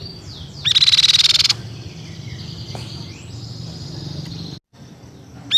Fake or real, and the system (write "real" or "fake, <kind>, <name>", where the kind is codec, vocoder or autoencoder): real